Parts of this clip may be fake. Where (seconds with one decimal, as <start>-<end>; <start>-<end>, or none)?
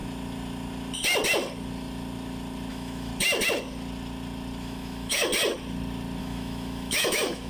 2.7-3.1; 4.6-5.3; 6.2-7.5